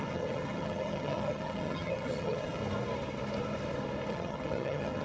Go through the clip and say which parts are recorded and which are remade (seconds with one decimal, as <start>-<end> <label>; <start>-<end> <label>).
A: 0.0-2.6 remade; 2.6-4.1 recorded; 4.1-5.0 remade